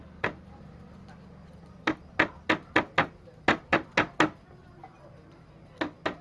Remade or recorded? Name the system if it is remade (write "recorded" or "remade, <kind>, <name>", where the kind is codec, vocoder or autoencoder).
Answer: recorded